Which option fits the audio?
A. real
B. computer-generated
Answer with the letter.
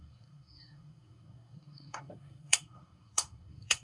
B